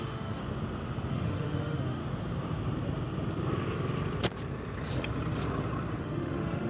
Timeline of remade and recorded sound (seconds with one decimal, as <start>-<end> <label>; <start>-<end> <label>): 0.0-0.4 remade; 0.4-1.1 recorded; 1.1-2.0 remade; 2.0-6.0 recorded; 6.0-6.7 remade